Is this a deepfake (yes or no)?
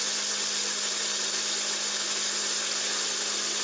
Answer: no